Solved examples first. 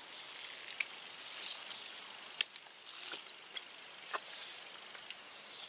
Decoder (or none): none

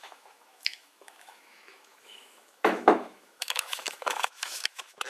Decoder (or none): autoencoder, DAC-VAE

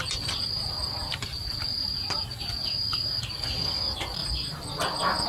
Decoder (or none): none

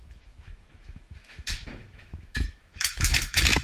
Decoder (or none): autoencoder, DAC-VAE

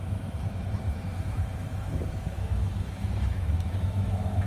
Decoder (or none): autoencoder, DAC-VAE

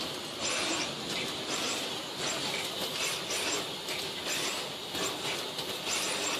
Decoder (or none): none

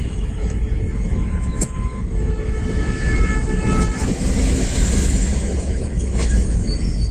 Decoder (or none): autoencoder, DAC-VAE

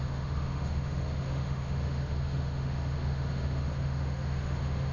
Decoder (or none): autoencoder, DAC-VAE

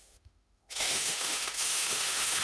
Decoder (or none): autoencoder, DAC-VAE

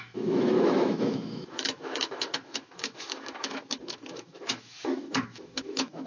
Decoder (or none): autoencoder, DAC-VAE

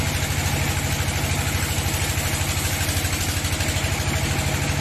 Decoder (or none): none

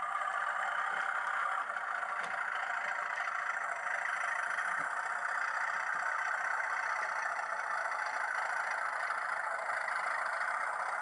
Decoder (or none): none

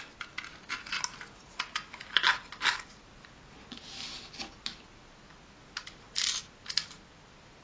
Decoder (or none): none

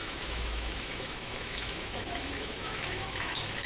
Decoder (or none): autoencoder, DAC-VAE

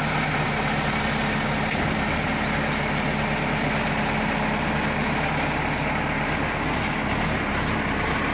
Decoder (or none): none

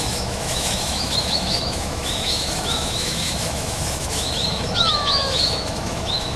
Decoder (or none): autoencoder, DAC-VAE